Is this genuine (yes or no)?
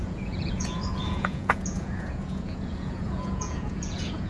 no